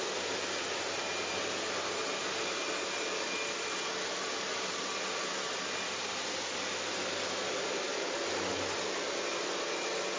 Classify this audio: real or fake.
real